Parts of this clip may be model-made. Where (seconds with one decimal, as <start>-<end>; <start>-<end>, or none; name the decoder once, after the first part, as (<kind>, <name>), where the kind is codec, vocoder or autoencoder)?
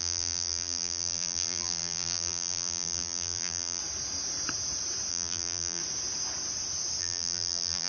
0.0-3.8 (vocoder, BigVGAN v2); 5.1-5.8; 7.0-7.9